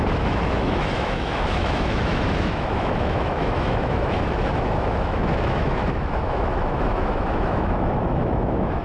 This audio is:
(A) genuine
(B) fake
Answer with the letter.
B